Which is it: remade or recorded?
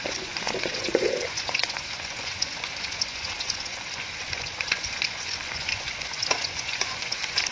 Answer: remade